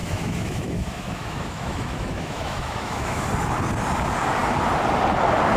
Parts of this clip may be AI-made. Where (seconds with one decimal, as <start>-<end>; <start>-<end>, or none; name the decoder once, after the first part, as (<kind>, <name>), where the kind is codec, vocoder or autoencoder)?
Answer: 0.0-3.3 (autoencoder, DAC-VAE)